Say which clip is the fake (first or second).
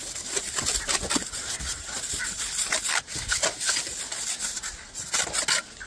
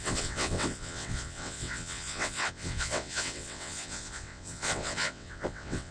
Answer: second